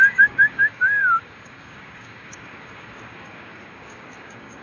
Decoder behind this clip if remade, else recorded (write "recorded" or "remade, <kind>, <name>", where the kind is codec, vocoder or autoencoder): remade, codec, DAC